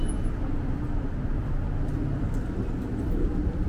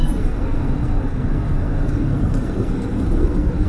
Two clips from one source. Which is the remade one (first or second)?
second